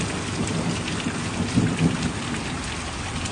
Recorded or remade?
remade